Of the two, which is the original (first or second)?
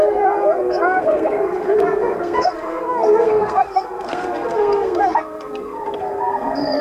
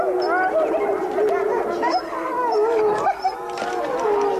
second